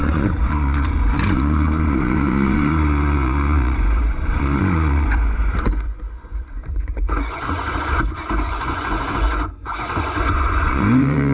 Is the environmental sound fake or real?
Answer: fake